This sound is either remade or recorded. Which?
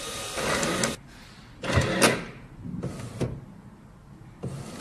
recorded